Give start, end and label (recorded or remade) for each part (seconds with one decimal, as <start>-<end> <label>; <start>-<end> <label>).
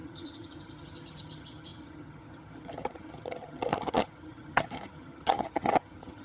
0.0-6.2 remade